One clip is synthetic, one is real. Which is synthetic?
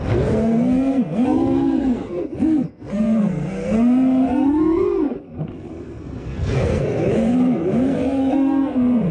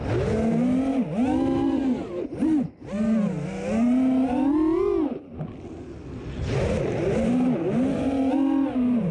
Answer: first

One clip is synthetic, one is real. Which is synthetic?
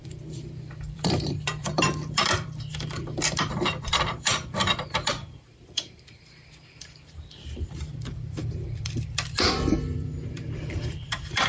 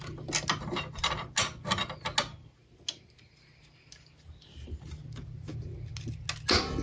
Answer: first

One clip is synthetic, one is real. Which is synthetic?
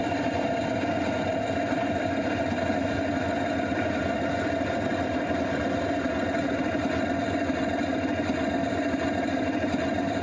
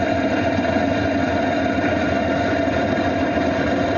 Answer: first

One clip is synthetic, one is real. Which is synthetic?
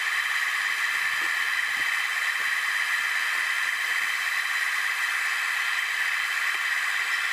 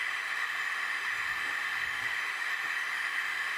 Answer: second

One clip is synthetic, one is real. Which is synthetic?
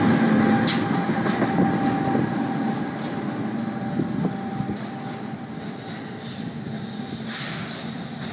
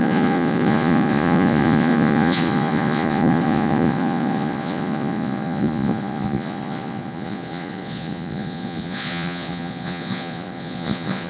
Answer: second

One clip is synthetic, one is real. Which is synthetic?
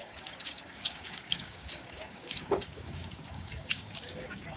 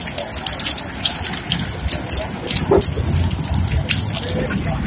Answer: first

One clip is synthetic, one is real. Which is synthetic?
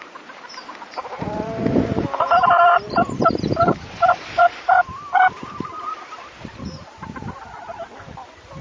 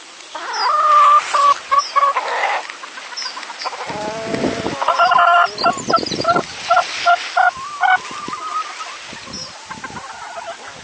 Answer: first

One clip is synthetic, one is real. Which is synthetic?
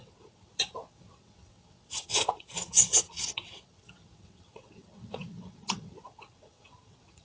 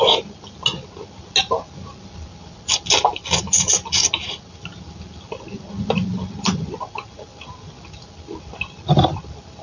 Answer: first